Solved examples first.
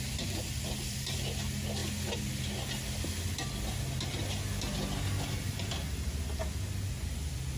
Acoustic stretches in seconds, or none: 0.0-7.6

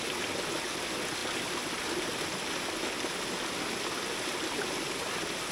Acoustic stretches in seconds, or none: 0.0-5.5

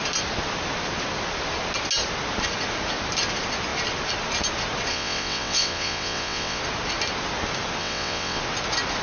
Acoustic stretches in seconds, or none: 0.0-4.9; 6.6-7.8; 8.4-9.0

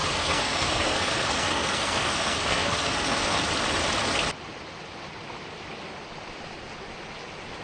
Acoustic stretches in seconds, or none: 3.4-7.6

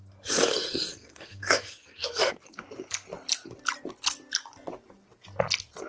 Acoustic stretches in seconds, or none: 0.0-0.5; 2.3-5.9

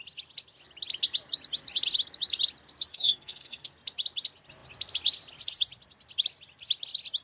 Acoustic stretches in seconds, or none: 0.0-2.9; 3.7-7.2

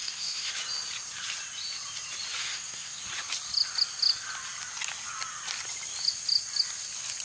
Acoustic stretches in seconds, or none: 0.5-2.4; 3.0-7.2